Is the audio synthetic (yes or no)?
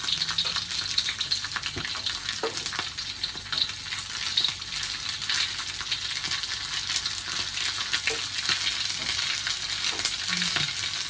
no